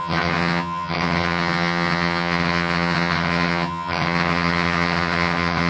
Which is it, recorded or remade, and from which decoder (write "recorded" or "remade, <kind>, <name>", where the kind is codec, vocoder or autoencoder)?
remade, vocoder, HiFi-GAN